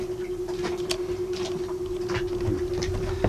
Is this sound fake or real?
real